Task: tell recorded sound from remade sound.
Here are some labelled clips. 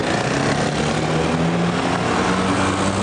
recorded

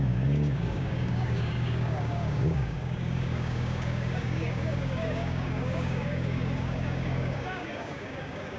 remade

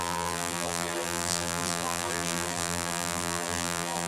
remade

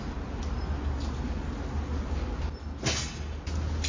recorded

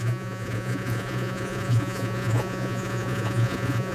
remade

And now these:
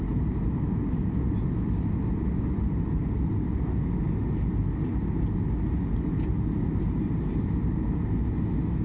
recorded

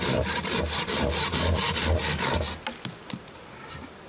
recorded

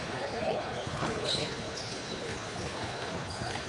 remade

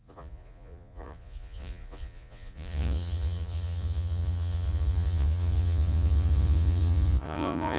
remade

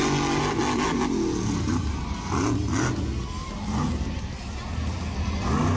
recorded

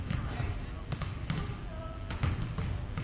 recorded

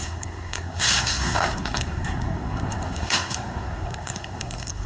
remade